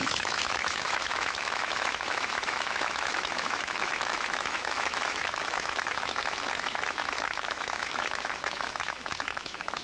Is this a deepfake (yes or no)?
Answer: yes